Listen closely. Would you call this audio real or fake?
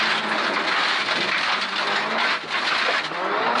real